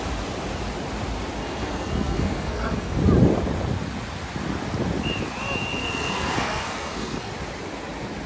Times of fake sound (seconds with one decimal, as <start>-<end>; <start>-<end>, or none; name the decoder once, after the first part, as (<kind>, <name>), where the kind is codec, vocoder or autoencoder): 1.4-2.9 (codec, SNAC); 5.8-7.3